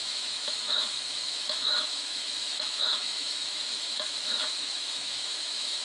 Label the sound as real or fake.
fake